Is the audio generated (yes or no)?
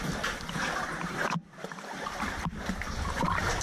yes